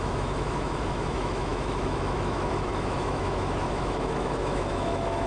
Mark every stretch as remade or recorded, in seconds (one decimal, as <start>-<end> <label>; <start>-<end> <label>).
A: 0.0-5.3 remade